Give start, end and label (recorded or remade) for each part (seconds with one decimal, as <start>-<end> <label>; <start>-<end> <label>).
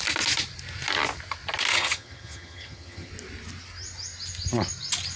0.0-1.7 recorded; 1.7-3.1 remade; 3.1-5.2 recorded